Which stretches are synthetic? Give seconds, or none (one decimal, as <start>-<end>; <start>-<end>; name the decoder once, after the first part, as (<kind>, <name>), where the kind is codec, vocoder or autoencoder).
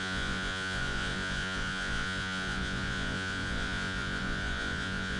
0.0-5.2 (vocoder, Vocos)